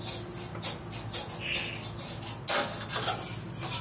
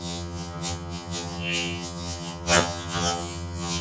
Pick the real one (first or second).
first